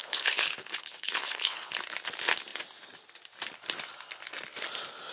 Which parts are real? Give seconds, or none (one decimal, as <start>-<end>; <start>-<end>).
1.7-5.1

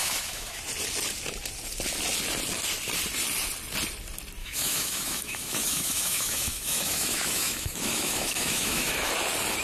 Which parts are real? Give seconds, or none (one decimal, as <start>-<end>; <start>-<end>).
0.6-4.4; 9.1-9.6

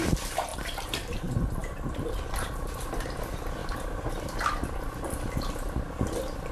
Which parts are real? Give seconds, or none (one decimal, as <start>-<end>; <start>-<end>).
0.0-0.5; 1.2-1.6; 2.5-3.6; 4.1-6.5

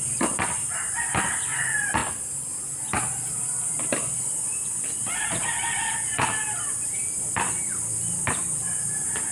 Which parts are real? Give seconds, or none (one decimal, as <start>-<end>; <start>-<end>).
0.0-9.3

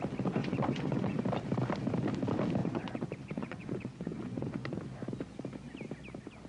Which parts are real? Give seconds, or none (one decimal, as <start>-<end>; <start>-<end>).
0.0-0.4; 1.2-2.6; 4.8-6.5

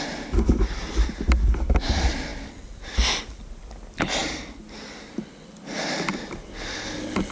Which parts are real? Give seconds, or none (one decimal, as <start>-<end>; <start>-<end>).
0.0-7.3

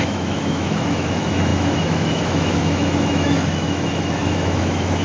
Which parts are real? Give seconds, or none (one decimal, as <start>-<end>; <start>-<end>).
none